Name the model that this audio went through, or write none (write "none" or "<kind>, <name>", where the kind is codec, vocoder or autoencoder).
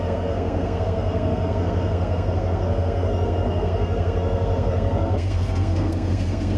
codec, SNAC